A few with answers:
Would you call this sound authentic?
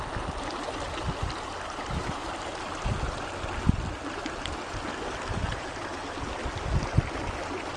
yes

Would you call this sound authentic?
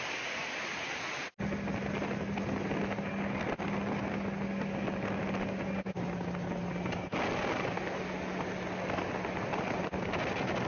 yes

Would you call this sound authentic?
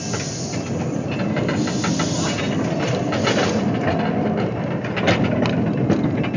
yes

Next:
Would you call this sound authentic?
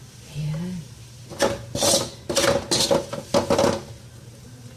yes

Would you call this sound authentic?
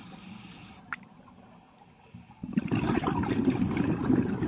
no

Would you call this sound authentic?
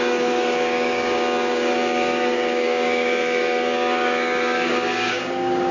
no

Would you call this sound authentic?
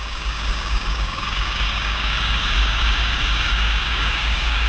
no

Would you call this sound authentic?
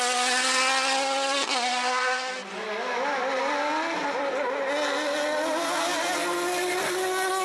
yes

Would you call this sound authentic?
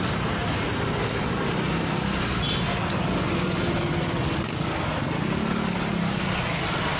yes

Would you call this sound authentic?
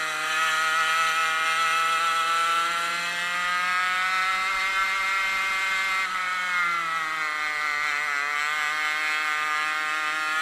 yes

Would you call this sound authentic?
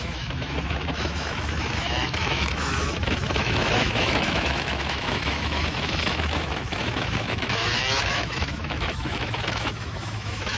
no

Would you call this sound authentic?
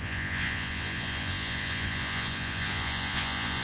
no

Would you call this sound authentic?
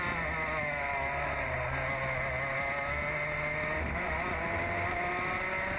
yes